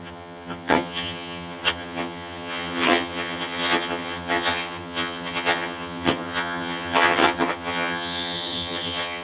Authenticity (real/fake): fake